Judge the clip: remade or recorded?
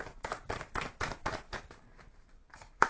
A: remade